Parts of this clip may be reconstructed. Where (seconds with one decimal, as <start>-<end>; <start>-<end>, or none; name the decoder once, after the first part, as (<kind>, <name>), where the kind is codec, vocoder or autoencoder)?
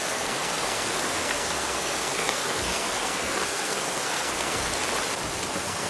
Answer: 0.0-4.7 (codec, SNAC); 5.5-5.9